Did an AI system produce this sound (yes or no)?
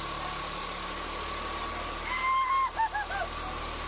no